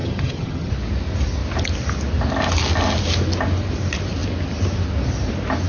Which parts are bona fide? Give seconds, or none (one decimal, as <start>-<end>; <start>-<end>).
0.7-5.7